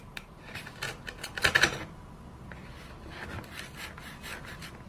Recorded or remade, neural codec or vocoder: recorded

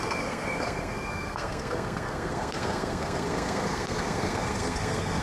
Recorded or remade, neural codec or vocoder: remade, codec, SNAC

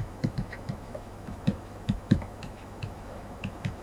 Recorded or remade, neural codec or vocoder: remade, autoencoder, DAC-VAE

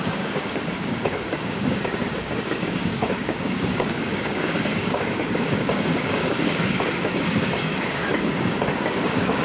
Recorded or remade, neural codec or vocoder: remade, codec, DAC